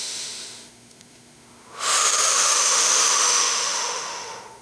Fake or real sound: fake